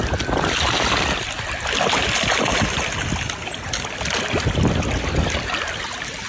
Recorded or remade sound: recorded